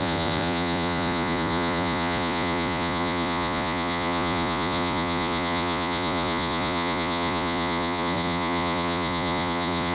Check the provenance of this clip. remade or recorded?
remade